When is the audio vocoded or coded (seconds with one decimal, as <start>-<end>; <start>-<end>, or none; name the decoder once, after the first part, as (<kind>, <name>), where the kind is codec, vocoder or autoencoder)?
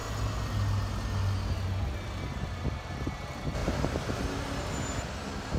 none